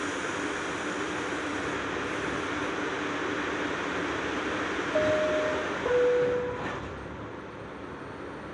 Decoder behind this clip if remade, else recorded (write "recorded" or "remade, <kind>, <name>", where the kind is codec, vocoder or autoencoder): recorded